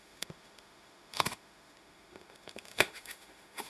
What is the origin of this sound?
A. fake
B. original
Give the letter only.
A